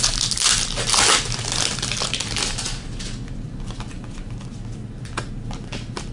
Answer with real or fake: real